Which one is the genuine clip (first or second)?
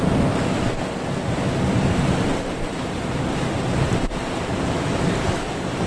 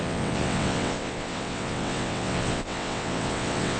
first